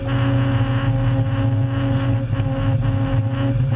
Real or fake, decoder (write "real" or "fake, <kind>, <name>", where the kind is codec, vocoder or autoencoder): real